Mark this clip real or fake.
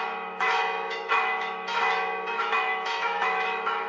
fake